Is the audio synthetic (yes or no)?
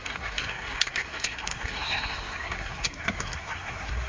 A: yes